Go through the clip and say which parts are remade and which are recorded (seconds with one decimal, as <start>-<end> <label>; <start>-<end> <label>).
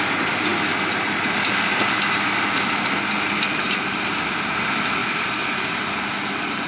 0.0-6.7 recorded